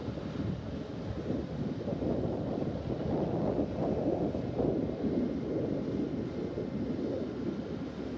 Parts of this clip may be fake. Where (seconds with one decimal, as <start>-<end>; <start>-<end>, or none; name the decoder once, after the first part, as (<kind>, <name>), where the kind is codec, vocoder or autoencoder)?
none